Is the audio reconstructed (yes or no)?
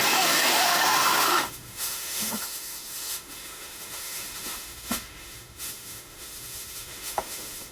yes